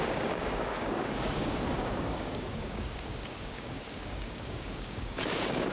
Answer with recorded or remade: remade